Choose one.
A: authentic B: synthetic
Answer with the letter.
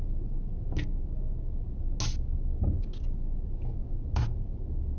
A